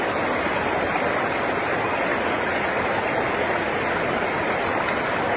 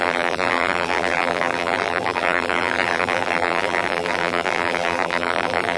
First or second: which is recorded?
first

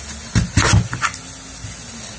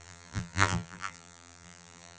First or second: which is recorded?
first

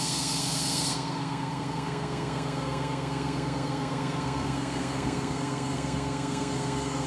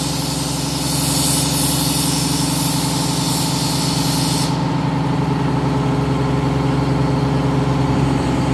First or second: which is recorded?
second